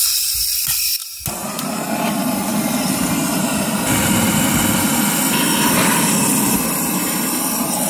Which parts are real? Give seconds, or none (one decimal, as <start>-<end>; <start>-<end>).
1.0-2.1; 2.5-7.0